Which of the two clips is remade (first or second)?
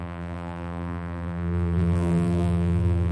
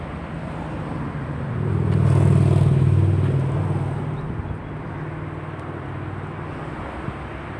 first